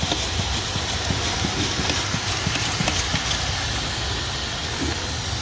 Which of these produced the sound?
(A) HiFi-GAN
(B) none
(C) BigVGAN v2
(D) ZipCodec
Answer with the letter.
B